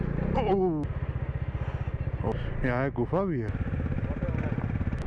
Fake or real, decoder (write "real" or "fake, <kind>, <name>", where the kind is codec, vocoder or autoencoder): real